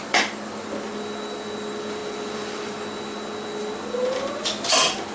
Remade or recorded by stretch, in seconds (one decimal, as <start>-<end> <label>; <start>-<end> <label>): 0.0-5.1 remade